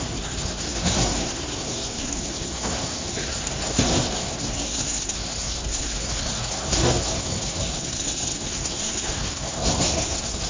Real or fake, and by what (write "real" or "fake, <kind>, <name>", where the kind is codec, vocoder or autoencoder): fake, codec, SNAC